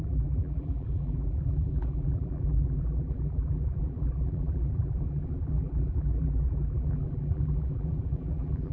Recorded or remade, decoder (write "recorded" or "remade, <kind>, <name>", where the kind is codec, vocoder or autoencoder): remade, vocoder, BigVGAN v2